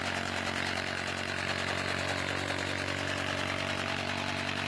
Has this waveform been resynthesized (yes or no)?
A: no